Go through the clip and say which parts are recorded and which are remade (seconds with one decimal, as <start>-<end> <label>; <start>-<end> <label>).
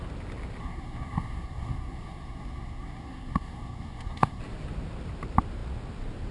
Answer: 0.0-0.6 recorded; 0.6-4.4 remade; 4.4-6.3 recorded